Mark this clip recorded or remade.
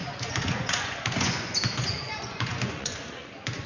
remade